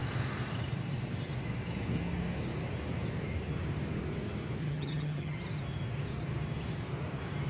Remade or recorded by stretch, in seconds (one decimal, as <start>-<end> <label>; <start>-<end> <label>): 0.0-4.6 recorded; 4.6-5.4 remade; 5.4-7.5 recorded

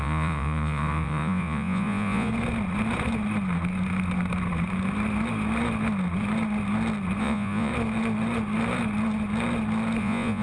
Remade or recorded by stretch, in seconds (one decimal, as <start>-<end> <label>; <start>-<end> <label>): 0.0-2.3 remade; 2.3-7.2 recorded; 7.2-7.7 remade; 7.7-10.0 recorded; 10.0-10.4 remade

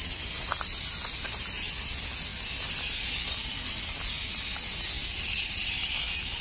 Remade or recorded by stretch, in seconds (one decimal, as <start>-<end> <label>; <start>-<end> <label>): 0.0-5.0 recorded; 5.0-6.4 remade